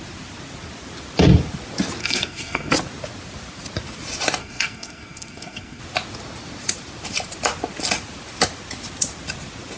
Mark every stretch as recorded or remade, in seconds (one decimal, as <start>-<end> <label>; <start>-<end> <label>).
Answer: 0.0-2.0 recorded; 2.0-2.7 remade; 2.7-4.4 recorded; 4.4-5.8 remade; 5.8-9.8 recorded